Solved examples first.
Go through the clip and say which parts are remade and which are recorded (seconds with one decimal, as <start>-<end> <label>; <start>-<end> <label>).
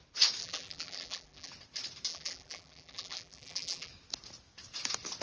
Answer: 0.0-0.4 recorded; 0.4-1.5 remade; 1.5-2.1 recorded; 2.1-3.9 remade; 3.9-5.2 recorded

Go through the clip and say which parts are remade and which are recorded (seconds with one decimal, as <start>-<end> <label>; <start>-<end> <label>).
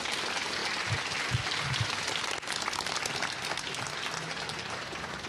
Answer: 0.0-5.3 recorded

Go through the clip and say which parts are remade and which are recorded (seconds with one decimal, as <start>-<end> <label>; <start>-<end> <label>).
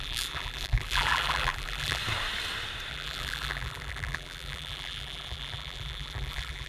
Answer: 0.0-2.0 remade; 2.0-2.9 recorded; 2.9-6.7 remade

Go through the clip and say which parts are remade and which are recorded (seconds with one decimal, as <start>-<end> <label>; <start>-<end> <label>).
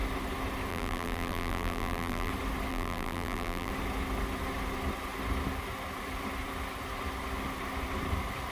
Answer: 0.0-0.7 recorded; 0.7-2.3 remade; 2.3-2.7 recorded; 2.7-3.7 remade; 3.7-8.5 recorded